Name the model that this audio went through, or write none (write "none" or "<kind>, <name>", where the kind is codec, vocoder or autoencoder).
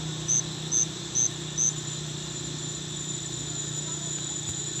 none